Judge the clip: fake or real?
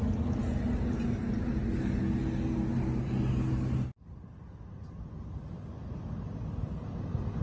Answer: real